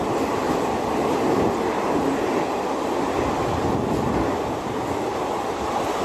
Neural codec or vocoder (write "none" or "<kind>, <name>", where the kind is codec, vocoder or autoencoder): none